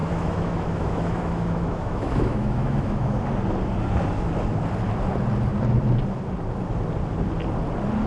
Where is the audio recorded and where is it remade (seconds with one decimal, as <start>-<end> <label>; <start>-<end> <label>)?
0.0-3.2 remade; 3.2-8.1 recorded